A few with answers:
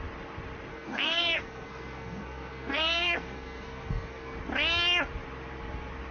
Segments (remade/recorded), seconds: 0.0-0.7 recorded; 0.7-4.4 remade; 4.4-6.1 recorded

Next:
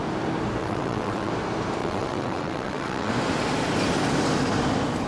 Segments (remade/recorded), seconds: 0.0-0.6 recorded; 0.6-1.3 remade; 1.3-1.8 recorded; 1.8-3.1 remade; 3.1-5.1 recorded